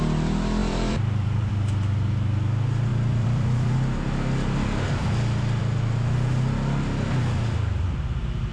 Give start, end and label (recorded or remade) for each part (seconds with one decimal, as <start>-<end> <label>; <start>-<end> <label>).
0.0-0.6 recorded; 0.6-1.5 remade; 1.5-2.9 recorded; 2.9-5.6 remade; 5.6-8.5 recorded

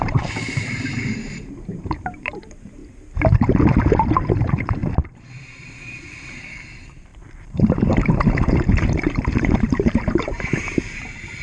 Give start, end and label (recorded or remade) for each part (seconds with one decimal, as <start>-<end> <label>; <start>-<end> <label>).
0.0-2.8 remade; 2.8-3.9 recorded; 3.9-4.8 remade; 4.8-5.7 recorded; 5.7-11.4 remade

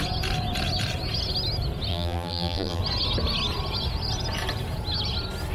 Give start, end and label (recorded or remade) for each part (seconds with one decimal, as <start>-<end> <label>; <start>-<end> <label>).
0.0-1.9 recorded; 1.9-2.8 remade; 2.8-5.5 recorded

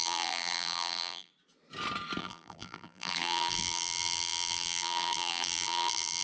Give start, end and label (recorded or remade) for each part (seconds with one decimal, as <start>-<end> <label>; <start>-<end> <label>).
0.0-1.3 remade; 1.3-2.2 recorded; 2.2-6.2 remade

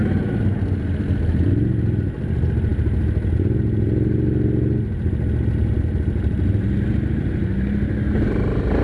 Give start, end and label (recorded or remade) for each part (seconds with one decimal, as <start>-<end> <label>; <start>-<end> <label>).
0.0-8.8 recorded

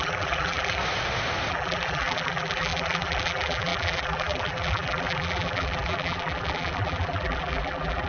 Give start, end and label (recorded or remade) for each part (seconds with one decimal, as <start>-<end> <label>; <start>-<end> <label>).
0.0-0.8 remade; 0.8-1.5 recorded; 1.5-8.1 remade